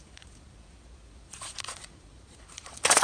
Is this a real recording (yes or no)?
no